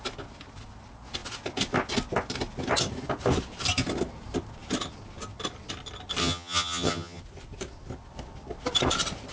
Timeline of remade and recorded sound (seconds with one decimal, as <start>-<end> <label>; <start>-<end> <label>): 0.0-6.2 recorded; 6.2-7.2 remade; 7.2-9.3 recorded